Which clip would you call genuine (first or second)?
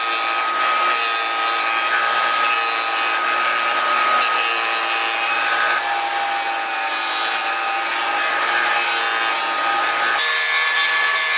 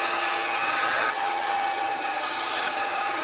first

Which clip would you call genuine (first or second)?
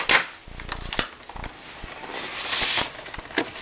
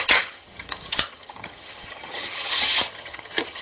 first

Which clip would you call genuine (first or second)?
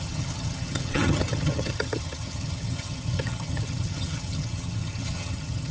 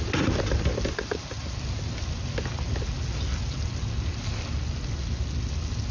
second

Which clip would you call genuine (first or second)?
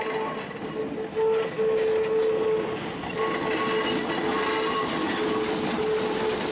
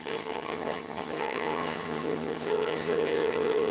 first